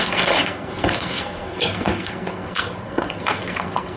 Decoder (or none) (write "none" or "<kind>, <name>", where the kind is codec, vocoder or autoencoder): codec, SNAC